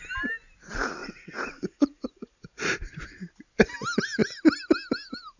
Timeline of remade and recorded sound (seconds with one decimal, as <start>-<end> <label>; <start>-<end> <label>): 0.0-1.0 recorded; 1.0-2.9 remade; 2.9-5.4 recorded